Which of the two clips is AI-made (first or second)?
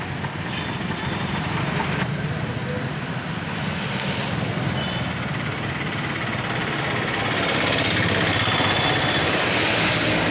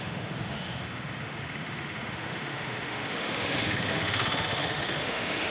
second